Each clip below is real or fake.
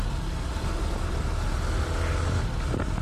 real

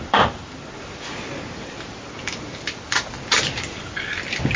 real